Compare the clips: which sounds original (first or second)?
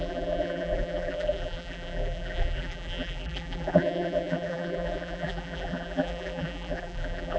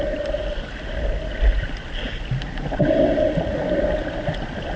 second